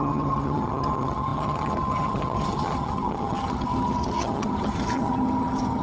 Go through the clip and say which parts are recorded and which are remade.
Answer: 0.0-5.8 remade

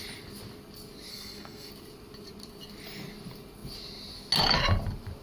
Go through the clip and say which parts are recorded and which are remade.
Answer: 0.0-1.1 recorded; 1.1-1.7 remade; 1.7-5.2 recorded

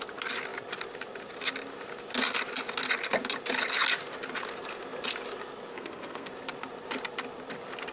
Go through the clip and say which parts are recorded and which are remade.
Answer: 0.0-5.7 recorded; 5.7-6.3 remade; 6.3-7.9 recorded

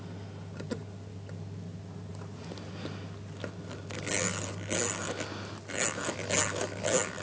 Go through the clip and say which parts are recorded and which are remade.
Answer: 0.0-7.2 recorded

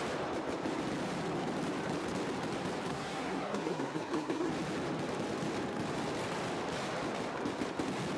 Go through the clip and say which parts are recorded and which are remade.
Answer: 0.0-2.9 recorded; 2.9-4.5 remade; 4.5-8.2 recorded

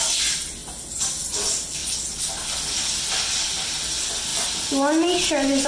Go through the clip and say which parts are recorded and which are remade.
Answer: 0.0-5.7 recorded